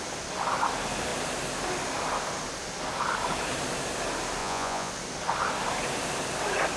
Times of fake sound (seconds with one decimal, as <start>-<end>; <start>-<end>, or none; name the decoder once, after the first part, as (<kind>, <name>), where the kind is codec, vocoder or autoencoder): 4.4-4.9 (vocoder, Vocos)